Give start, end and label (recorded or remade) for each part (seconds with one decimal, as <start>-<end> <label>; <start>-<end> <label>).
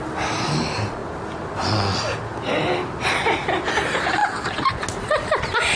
0.0-5.8 recorded